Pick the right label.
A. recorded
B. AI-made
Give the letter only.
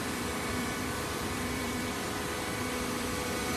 B